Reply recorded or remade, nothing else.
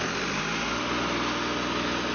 recorded